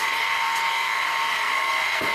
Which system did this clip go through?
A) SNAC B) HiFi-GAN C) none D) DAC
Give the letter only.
A